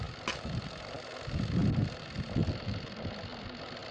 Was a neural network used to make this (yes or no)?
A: no